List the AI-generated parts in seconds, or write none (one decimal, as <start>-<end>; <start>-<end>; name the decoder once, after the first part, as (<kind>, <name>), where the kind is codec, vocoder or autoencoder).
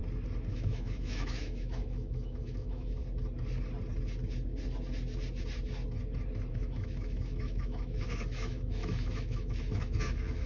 0.5-3.0 (autoencoder, DAC-VAE); 6.5-10.5